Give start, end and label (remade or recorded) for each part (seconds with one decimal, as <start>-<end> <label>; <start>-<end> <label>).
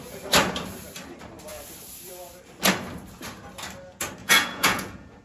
0.0-4.2 recorded; 4.2-5.2 remade